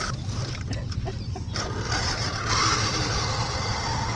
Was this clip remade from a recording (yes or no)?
no